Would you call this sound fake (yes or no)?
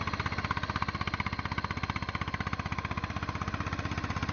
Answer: no